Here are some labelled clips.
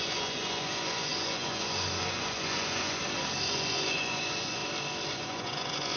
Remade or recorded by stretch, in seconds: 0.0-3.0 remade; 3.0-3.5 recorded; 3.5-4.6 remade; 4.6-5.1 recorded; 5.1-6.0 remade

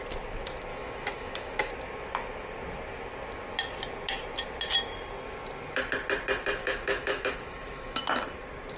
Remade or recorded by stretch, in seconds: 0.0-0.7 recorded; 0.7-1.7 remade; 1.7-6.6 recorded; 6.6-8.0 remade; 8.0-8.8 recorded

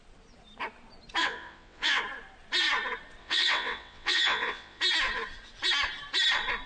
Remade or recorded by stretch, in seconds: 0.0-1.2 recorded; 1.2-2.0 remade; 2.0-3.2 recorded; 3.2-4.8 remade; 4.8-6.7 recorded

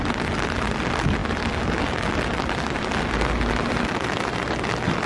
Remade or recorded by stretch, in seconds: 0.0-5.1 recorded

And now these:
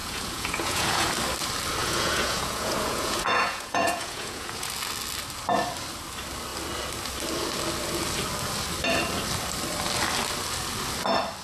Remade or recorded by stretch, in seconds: 0.0-1.1 remade; 1.1-1.8 recorded; 1.8-4.7 remade; 4.7-11.4 recorded

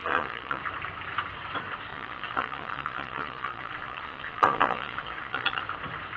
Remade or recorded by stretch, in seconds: 0.0-0.6 remade; 0.6-1.9 recorded; 1.9-5.6 remade; 5.6-6.2 recorded

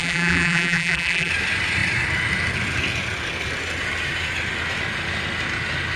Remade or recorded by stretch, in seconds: 0.0-1.3 remade; 1.3-6.0 recorded

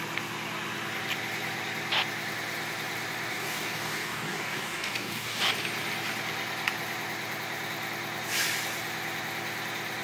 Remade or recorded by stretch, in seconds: 0.0-3.3 recorded; 3.3-5.5 remade; 5.5-10.0 recorded